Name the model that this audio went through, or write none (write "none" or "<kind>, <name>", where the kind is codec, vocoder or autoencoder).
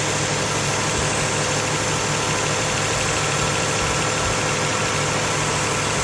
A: none